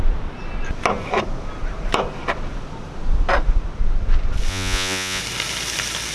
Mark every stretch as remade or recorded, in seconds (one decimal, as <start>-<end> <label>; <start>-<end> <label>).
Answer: 0.0-4.5 recorded; 4.5-5.2 remade; 5.2-6.1 recorded